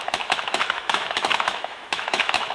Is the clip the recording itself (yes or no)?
no